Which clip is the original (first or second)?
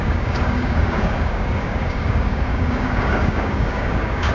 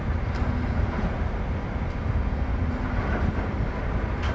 second